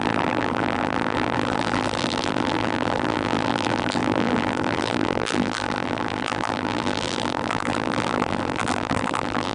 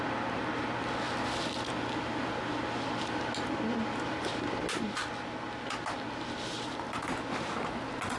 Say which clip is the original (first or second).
second